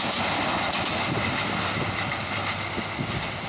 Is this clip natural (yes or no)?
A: yes